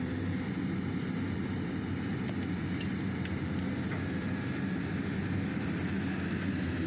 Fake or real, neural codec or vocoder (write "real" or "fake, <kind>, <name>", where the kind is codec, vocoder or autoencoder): real